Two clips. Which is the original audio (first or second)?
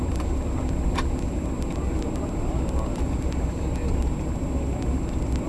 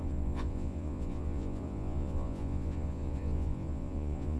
first